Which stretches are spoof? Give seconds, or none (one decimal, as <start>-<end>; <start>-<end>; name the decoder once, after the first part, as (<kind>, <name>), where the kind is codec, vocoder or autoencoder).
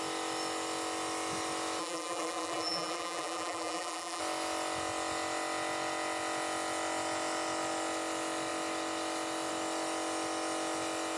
1.8-4.2 (vocoder, BigVGAN v2)